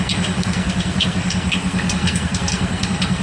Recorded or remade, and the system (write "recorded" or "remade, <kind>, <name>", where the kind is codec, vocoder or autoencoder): remade, codec, SNAC